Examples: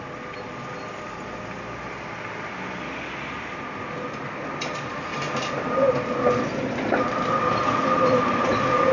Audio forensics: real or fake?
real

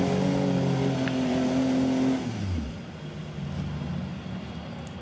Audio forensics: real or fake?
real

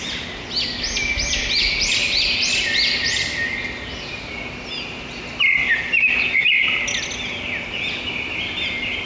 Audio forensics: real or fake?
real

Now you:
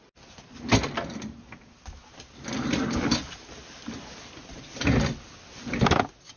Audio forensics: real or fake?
real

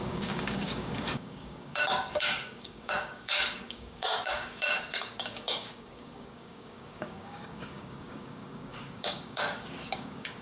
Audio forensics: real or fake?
fake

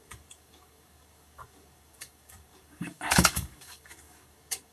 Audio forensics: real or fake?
fake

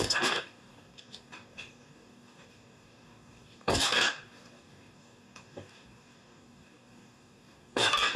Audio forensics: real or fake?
fake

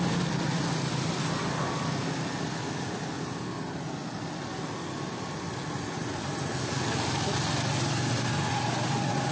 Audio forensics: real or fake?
real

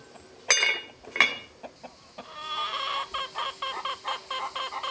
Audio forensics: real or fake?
real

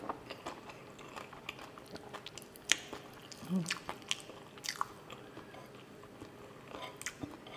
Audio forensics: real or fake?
real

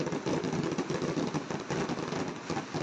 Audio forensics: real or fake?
real